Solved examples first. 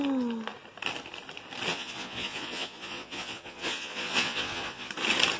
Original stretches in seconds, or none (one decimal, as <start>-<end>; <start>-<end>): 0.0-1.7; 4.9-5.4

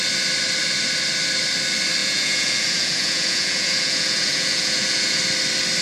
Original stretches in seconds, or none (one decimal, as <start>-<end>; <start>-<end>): 0.0-2.0; 5.2-5.8

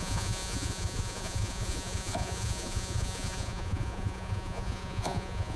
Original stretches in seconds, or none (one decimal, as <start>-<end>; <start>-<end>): none

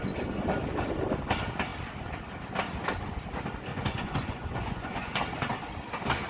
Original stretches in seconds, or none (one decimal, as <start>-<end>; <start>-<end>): 0.0-3.7; 5.2-6.3

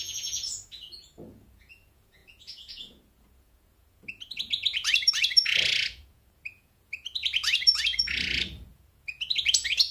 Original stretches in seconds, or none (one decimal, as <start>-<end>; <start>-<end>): none

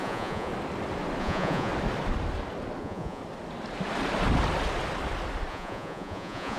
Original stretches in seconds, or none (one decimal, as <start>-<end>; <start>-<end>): 0.5-1.2; 1.7-2.8; 3.2-5.5

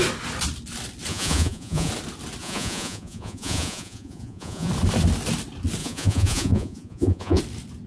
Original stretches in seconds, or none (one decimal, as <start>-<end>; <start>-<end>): 0.0-1.1; 1.9-2.4; 4.7-5.8; 7.4-7.9

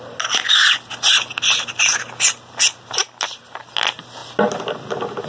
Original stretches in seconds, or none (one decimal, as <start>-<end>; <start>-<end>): 0.0-5.3